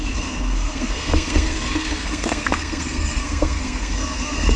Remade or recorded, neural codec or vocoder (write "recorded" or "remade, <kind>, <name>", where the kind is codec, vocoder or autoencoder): remade, codec, SNAC